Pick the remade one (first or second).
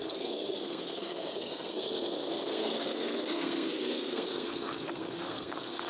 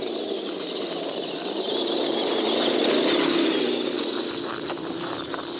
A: first